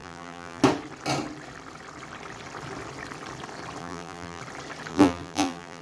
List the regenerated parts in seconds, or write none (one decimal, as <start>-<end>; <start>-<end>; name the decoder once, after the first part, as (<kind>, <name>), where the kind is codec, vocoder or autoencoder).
0.0-0.6 (vocoder, BigVGAN v2); 3.8-4.4; 4.9-5.8